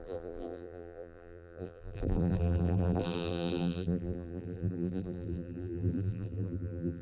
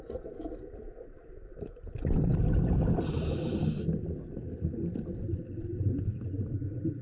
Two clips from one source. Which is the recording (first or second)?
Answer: second